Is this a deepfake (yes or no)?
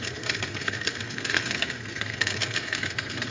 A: yes